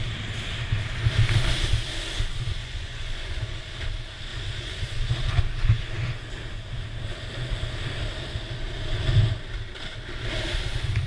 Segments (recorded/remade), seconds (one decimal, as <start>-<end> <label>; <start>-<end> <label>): 0.0-2.6 recorded; 2.6-3.6 remade; 3.6-4.3 recorded; 4.3-5.4 remade; 5.4-11.1 recorded